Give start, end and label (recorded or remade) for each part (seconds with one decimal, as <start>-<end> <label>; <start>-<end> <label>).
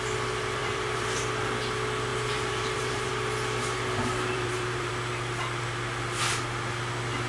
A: 0.0-0.6 recorded; 0.6-1.3 remade; 1.3-2.1 recorded; 2.1-3.1 remade; 3.1-4.3 recorded; 4.3-4.9 remade; 4.9-7.3 recorded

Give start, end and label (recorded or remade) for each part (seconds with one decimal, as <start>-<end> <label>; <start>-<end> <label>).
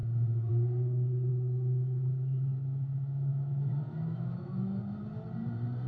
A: 0.0-1.3 recorded; 1.3-4.8 remade; 4.8-5.9 recorded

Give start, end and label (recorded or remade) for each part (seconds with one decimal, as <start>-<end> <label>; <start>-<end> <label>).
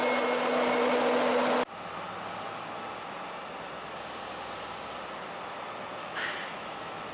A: 0.0-6.0 recorded; 6.0-7.1 remade